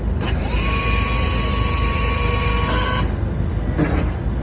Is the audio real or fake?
real